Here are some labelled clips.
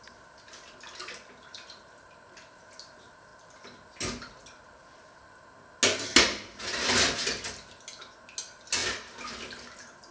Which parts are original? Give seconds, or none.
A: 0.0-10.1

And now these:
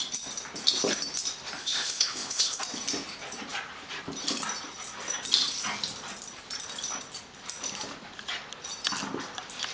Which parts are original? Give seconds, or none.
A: 0.0-1.6; 2.6-9.7

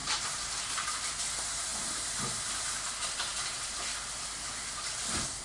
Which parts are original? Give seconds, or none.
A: 0.0-5.4

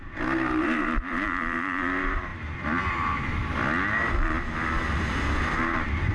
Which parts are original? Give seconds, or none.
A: 2.3-2.9; 3.4-4.9

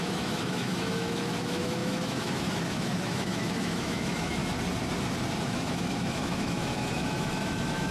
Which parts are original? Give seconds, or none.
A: 4.4-5.4

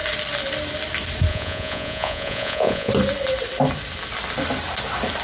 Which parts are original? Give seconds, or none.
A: 0.0-1.3; 2.9-5.2

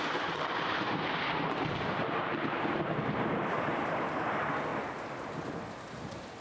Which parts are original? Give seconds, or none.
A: 4.7-5.9

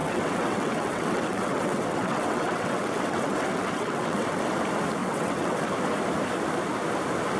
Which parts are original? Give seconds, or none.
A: 4.4-5.0; 5.6-7.4